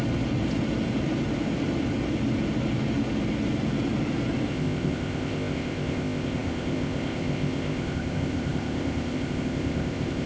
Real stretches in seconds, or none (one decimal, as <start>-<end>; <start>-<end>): 0.0-4.5